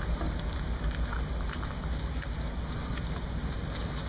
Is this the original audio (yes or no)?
yes